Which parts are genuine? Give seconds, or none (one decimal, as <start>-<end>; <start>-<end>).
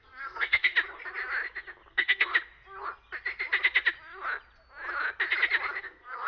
0.7-1.9; 2.3-5.8